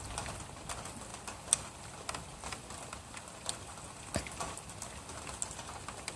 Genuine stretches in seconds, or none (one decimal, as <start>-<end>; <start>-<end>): 0.0-6.2

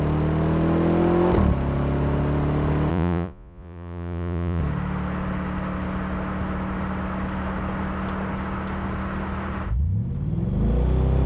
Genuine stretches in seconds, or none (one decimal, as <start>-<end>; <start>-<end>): 0.0-2.9; 4.6-11.3

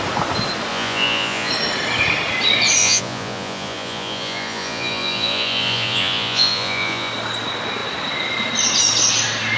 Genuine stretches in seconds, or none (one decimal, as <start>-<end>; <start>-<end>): 0.0-0.7; 1.5-2.8; 7.1-9.6

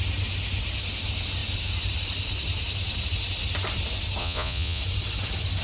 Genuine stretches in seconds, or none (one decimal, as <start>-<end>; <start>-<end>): 0.0-4.2; 4.8-5.6

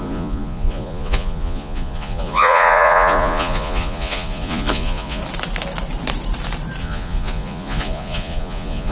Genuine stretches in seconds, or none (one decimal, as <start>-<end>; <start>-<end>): 5.2-6.8

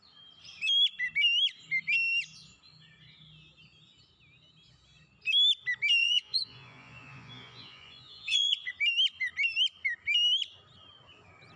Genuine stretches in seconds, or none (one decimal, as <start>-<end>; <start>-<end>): 0.0-6.0; 8.7-11.6

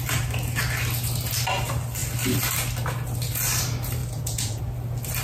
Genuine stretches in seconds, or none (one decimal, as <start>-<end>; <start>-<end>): 0.0-4.0; 4.6-5.2

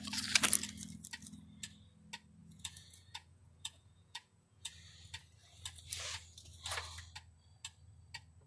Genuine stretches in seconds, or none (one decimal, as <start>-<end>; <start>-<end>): 0.0-2.4; 4.7-8.5